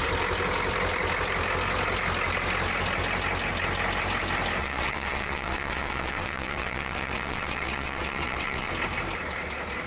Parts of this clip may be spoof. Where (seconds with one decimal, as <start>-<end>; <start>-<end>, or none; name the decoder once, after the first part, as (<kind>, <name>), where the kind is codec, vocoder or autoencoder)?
4.6-8.7 (vocoder, WaveNeXt)